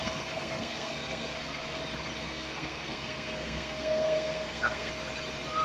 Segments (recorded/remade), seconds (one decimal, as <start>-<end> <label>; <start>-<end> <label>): 0.0-1.8 remade; 1.8-2.2 recorded; 2.2-4.9 remade; 4.9-5.6 recorded